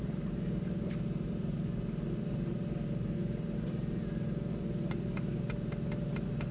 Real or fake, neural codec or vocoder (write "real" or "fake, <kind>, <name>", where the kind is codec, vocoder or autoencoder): real